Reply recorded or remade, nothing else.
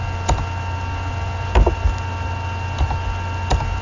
recorded